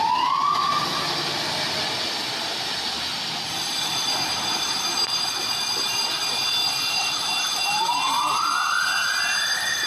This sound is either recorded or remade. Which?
recorded